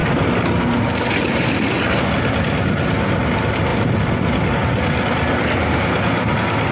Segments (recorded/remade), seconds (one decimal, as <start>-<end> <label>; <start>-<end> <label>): 0.0-6.7 recorded